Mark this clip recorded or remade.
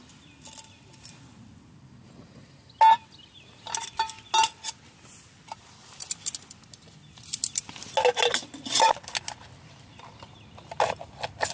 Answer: recorded